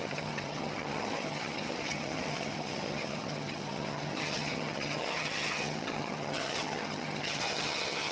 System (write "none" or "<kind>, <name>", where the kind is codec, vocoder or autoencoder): vocoder, HiFi-GAN